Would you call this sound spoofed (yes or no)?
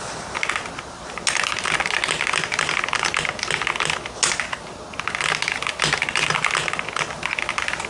no